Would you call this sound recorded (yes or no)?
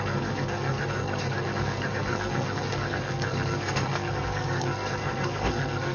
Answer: no